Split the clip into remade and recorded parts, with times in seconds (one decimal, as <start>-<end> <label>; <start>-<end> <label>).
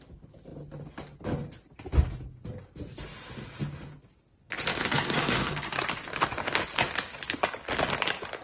0.0-4.7 recorded; 4.7-5.7 remade; 5.7-8.4 recorded